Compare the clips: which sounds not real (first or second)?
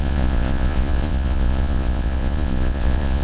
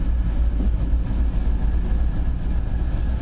first